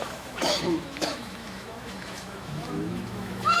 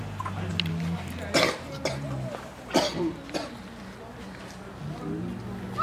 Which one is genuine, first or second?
second